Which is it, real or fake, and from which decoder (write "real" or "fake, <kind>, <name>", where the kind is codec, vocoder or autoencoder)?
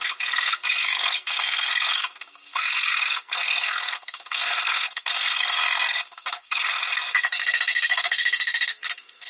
fake, codec, SNAC